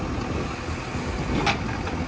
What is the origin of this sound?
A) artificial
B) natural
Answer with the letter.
B